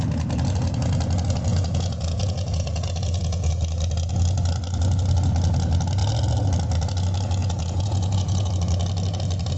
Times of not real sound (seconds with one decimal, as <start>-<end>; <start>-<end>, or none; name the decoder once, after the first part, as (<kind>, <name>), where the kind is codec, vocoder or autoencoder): 1.5-3.5 (vocoder, Vocos); 7.4-8.5